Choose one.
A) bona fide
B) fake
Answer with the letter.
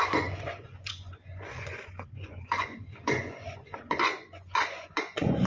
B